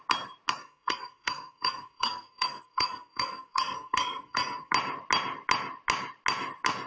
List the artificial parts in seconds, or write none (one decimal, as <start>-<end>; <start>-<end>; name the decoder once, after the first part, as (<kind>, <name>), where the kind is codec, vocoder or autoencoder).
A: 0.6-4.7 (codec, SNAC)